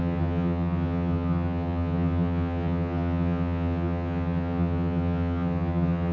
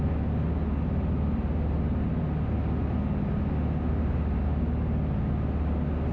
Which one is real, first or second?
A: second